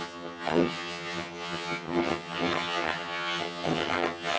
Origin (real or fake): fake